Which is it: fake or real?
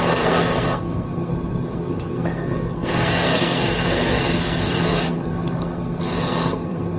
fake